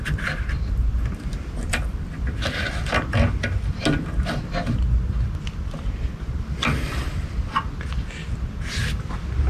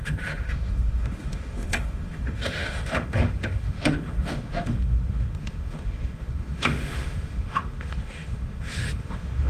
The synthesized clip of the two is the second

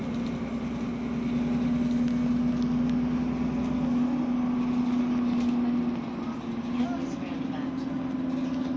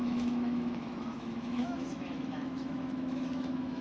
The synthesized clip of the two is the second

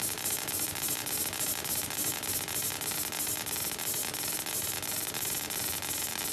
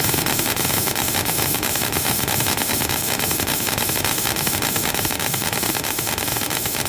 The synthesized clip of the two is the second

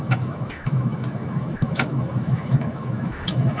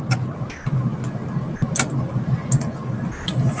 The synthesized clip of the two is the first